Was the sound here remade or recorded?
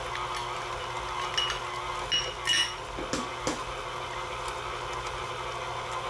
recorded